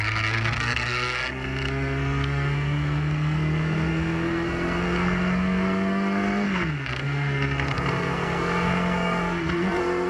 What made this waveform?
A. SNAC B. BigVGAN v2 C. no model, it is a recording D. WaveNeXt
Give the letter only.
A